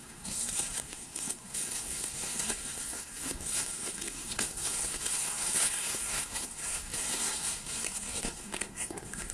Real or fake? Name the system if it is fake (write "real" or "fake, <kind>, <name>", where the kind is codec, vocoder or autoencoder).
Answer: fake, codec, SNAC